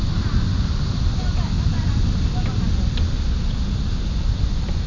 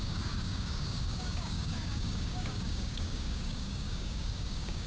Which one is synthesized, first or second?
second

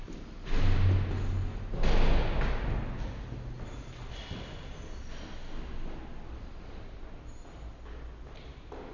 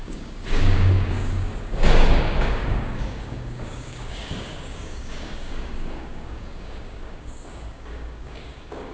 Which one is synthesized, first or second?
second